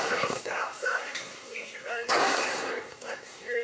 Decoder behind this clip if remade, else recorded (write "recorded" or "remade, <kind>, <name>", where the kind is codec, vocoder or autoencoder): remade, codec, SNAC